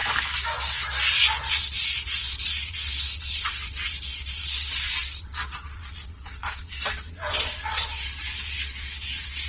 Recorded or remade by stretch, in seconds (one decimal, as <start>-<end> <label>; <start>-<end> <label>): 0.0-1.5 recorded; 1.5-9.5 remade